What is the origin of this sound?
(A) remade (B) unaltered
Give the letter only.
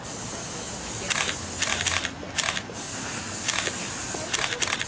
B